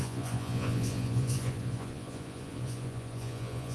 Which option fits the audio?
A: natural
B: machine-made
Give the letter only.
B